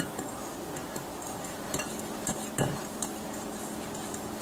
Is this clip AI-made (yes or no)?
no